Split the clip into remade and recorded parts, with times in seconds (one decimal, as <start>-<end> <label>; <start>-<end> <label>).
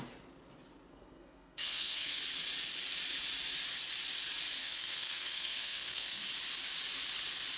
0.0-0.9 recorded; 0.9-2.2 remade; 2.2-4.6 recorded; 4.6-6.2 remade; 6.2-7.6 recorded